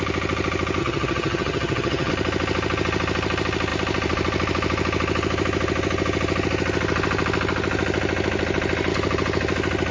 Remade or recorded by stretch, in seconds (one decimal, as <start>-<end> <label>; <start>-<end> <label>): 0.0-0.8 recorded; 0.8-2.1 remade; 2.1-9.9 recorded